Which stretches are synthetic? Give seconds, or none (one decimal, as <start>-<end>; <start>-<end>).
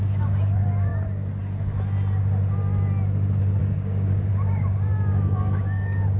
0.0-0.9; 3.6-6.2